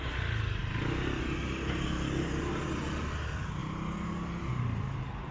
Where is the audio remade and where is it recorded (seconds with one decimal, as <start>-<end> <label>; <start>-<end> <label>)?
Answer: 0.0-5.3 recorded